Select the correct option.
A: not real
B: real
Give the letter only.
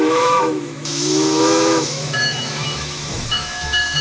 A